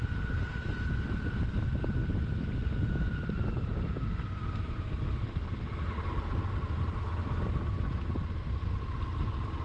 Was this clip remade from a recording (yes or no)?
no